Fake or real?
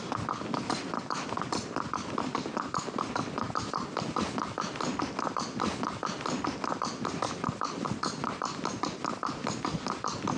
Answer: real